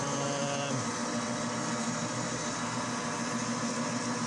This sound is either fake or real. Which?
real